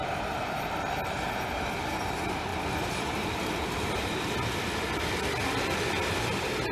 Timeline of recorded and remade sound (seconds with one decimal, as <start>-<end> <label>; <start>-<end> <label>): 0.0-6.7 recorded